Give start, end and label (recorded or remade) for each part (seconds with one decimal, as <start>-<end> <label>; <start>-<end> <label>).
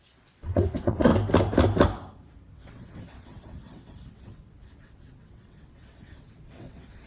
0.0-1.1 remade; 1.1-2.5 recorded; 2.5-7.1 remade